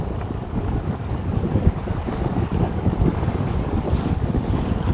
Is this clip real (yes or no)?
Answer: no